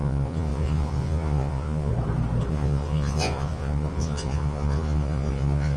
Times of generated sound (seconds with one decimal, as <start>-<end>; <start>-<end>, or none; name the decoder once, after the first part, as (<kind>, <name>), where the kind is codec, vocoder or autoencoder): 0.0-1.9 (vocoder, Vocos); 2.5-5.8